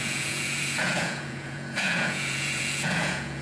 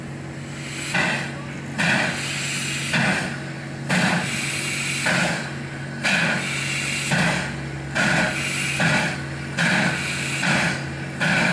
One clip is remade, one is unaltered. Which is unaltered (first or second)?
second